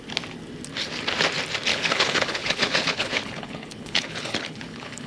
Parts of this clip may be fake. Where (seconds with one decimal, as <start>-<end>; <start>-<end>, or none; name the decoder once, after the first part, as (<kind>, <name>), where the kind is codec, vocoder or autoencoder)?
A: 1.7-5.1 (codec, HILCodec)